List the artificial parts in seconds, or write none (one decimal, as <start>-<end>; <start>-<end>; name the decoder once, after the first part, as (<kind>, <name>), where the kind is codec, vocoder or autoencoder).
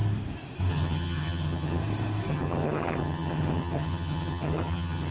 0.7-1.8 (vocoder, HiFi-GAN); 2.3-5.1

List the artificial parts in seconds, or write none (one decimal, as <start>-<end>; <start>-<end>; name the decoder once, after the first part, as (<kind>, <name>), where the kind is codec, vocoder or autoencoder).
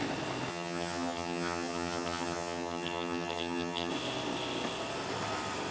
0.5-3.9 (vocoder, HiFi-GAN)